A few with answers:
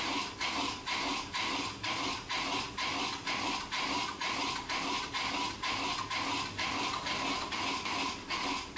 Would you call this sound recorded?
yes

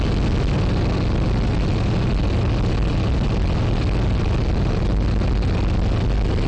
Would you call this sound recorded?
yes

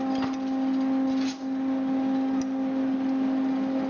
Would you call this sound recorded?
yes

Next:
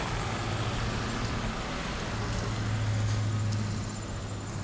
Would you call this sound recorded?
yes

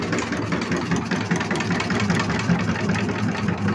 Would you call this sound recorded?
yes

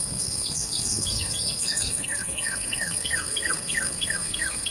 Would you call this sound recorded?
no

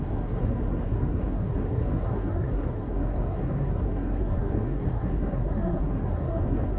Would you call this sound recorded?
no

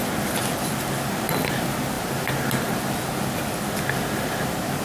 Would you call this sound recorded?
yes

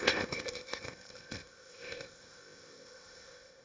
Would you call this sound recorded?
no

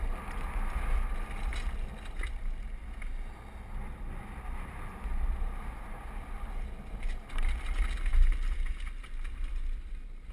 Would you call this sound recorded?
yes